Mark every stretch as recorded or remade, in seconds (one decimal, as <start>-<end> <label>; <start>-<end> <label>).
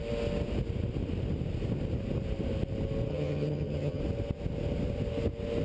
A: 0.0-3.1 recorded; 3.1-4.0 remade; 4.0-5.6 recorded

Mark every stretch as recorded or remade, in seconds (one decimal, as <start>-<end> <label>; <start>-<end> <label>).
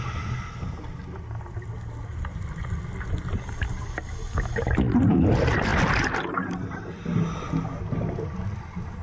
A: 0.0-9.0 recorded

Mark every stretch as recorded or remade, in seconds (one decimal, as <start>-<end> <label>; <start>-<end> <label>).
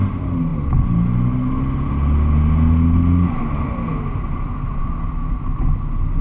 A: 0.0-6.2 recorded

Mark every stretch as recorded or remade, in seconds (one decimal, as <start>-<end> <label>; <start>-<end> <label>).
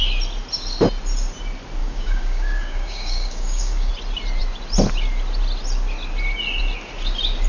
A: 0.0-1.8 recorded; 1.8-3.9 remade; 3.9-7.5 recorded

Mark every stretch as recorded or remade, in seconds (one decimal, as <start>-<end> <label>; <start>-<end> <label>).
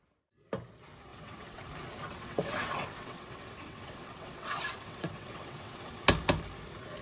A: 0.0-1.1 recorded; 1.1-1.6 remade; 1.6-2.1 recorded; 2.1-6.0 remade; 6.0-7.0 recorded